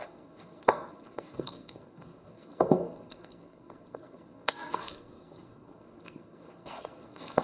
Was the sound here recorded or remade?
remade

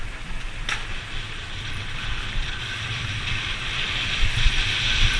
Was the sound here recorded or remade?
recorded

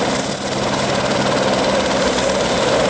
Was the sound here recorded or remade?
recorded